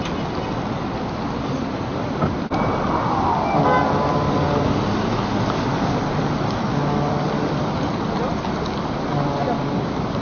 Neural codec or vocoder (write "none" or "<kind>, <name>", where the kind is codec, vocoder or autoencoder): none